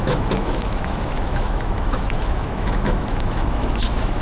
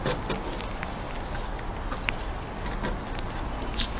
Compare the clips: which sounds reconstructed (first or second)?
first